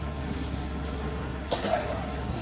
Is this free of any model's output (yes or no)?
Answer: no